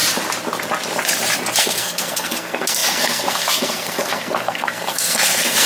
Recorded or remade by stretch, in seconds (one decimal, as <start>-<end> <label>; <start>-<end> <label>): 0.0-1.6 recorded; 1.6-5.7 remade